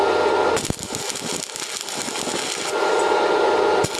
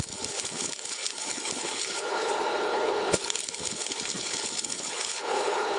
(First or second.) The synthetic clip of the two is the second